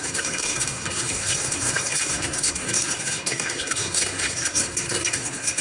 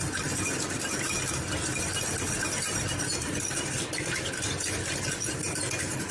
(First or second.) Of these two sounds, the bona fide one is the second